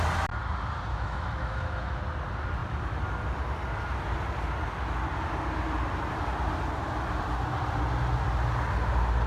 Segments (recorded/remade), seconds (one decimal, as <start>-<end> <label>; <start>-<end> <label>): 0.0-0.9 recorded; 0.9-2.0 remade; 2.0-9.3 recorded